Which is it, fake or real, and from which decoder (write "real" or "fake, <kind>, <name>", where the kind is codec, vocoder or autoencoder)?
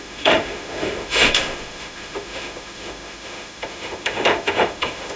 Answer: fake, autoencoder, DAC-VAE